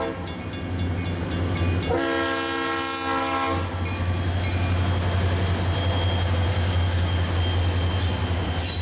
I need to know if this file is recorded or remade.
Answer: recorded